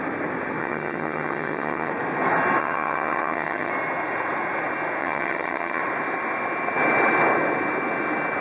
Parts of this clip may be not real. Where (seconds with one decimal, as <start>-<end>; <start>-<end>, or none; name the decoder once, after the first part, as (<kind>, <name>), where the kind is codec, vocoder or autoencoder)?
0.6-1.9 (vocoder, HiFi-GAN); 2.6-3.7; 5.0-5.8